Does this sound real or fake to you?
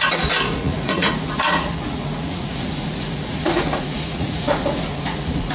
fake